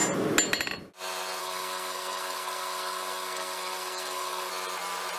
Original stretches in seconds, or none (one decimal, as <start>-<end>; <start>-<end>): 0.0-1.4; 4.5-5.2